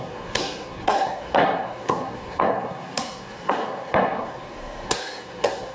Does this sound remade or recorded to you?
remade